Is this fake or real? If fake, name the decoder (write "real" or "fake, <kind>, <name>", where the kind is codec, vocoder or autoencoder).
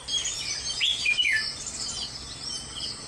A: real